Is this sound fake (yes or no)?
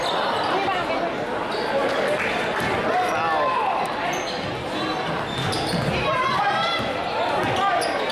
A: no